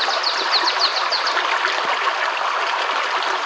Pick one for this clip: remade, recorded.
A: recorded